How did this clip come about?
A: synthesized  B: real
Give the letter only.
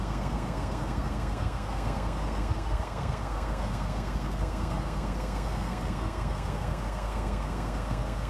A